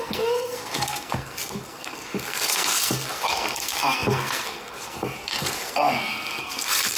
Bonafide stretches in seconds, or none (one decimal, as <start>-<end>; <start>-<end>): none